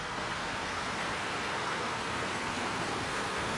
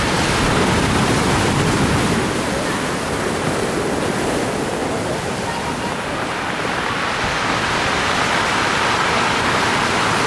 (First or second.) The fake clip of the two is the first